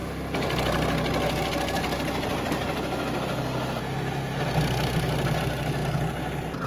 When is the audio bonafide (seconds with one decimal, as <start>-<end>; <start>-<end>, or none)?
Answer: 0.0-6.7